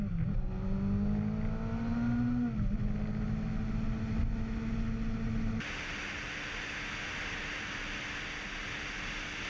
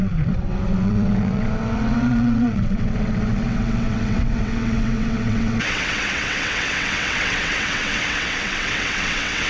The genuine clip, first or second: first